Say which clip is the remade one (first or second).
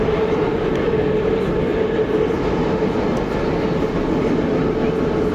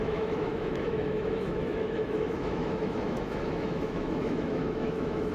second